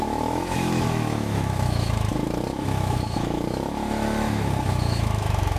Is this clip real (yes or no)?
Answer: no